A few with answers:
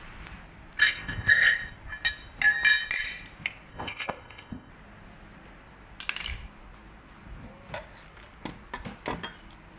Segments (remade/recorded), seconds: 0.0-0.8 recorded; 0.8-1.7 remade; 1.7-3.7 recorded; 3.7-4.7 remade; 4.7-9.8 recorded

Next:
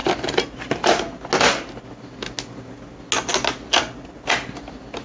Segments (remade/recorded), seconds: 0.0-5.0 recorded

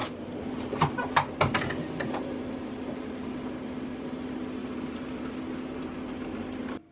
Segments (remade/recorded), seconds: 0.0-6.9 recorded